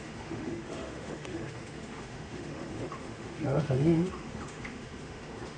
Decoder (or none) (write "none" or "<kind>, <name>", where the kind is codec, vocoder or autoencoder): autoencoder, DAC-VAE